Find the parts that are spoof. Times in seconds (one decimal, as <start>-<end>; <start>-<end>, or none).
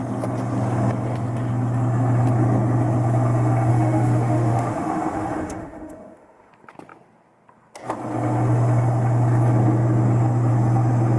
3.7-6.5